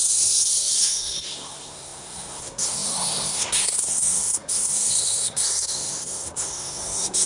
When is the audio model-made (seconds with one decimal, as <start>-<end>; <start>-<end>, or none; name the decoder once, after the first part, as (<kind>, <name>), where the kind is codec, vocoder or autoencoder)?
0.0-7.3 (codec, SNAC)